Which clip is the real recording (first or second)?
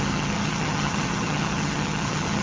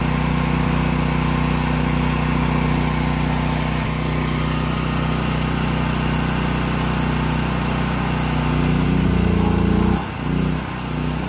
second